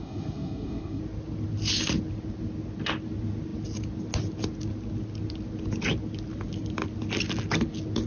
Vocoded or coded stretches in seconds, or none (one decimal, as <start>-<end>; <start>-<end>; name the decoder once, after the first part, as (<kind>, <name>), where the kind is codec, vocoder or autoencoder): 0.0-1.0 (codec, SNAC)